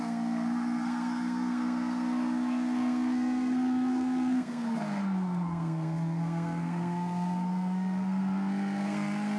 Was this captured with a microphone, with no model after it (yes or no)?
no